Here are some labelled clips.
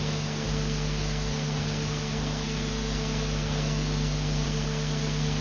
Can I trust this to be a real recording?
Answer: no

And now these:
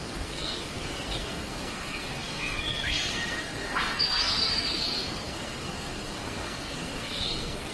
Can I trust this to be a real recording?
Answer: no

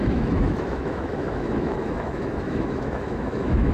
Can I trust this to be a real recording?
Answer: no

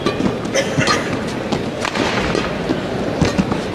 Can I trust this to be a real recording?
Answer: yes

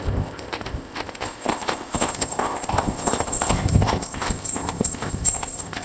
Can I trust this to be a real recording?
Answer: no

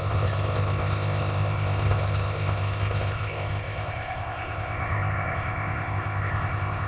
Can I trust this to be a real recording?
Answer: no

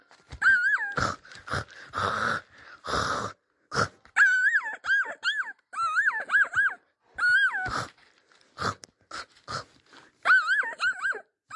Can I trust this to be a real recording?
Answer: yes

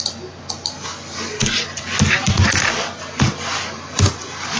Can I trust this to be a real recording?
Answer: yes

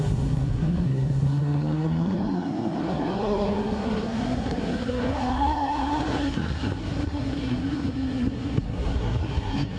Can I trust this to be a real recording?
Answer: no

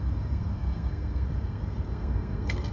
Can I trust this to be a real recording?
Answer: no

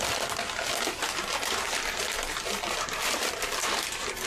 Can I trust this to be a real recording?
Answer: yes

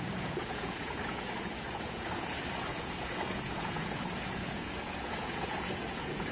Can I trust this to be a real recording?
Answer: no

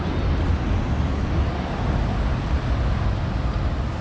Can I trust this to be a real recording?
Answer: yes